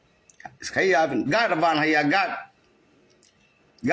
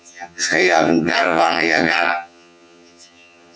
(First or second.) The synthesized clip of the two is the second